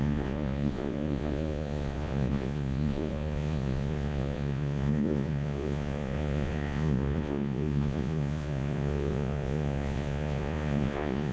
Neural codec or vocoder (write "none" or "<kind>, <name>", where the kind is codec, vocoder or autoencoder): vocoder, Vocos